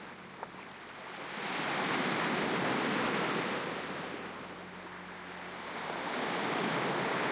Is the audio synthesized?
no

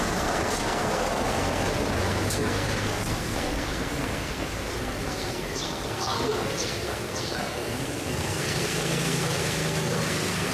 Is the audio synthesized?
yes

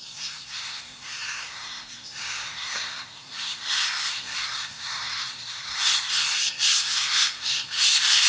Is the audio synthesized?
yes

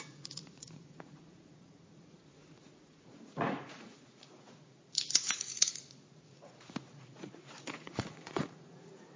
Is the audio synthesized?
yes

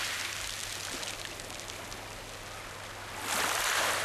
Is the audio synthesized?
no